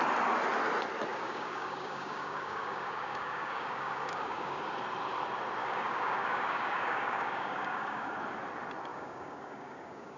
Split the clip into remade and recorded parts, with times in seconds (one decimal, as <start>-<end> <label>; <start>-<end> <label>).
0.0-1.1 recorded; 1.1-4.6 remade; 4.6-5.6 recorded; 5.6-8.1 remade; 8.1-8.9 recorded; 8.9-10.2 remade